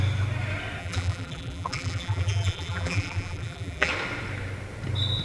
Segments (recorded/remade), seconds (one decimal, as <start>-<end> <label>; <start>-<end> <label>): 0.0-0.8 recorded; 0.8-3.9 remade; 3.9-5.2 recorded